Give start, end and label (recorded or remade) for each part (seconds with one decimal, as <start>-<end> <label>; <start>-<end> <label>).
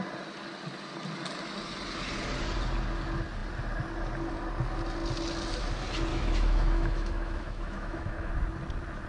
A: 0.0-6.1 recorded; 6.1-8.3 remade; 8.3-9.1 recorded